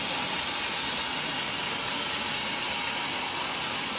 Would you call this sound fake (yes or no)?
no